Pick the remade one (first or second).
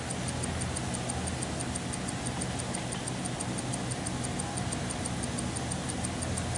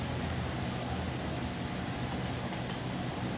second